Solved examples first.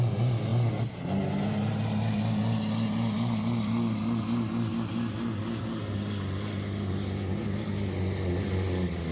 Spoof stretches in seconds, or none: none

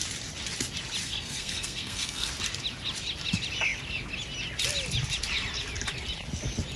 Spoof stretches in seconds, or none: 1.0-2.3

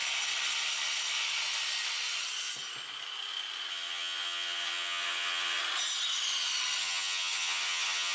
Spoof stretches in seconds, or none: 3.7-5.6; 6.8-8.1

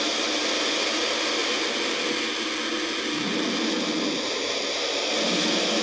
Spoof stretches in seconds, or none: none

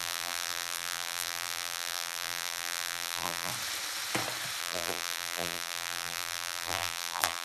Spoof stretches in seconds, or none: 0.0-3.5; 4.6-7.4

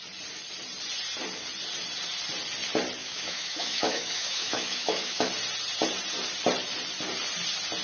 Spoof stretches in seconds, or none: 3.0-5.3